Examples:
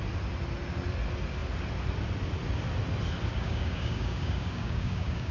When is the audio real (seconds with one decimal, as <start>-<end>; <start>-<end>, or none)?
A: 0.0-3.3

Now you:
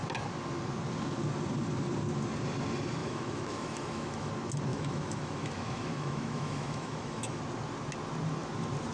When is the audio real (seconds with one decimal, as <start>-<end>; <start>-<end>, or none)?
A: 0.0-3.0; 4.3-4.7; 7.4-8.9

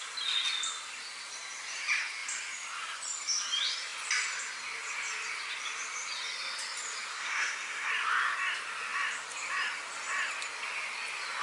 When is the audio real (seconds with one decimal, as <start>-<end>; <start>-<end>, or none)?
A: 0.0-7.1; 7.9-11.4